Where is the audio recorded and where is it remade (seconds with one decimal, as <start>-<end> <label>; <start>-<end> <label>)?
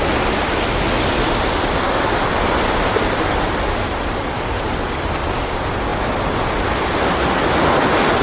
0.0-8.2 recorded